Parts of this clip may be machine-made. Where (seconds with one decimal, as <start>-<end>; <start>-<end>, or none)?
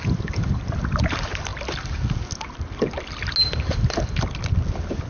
none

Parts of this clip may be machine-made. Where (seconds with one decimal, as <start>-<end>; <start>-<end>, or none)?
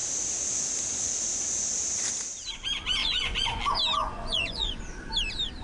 3.0-3.6; 4.0-4.8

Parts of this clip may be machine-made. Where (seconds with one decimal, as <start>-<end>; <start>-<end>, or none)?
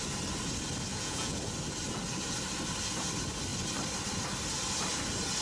0.9-1.4